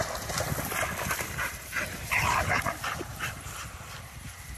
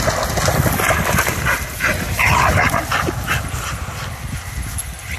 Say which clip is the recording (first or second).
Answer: second